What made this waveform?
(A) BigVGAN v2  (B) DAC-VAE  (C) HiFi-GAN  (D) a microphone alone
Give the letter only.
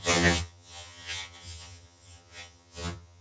C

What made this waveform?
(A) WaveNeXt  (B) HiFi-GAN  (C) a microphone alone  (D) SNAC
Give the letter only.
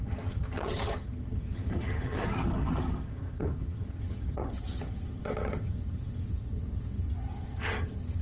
B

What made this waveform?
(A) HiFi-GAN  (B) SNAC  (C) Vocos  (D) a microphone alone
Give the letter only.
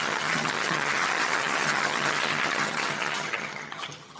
A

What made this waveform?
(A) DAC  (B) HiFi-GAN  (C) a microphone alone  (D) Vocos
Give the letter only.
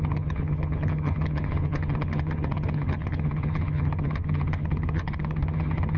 B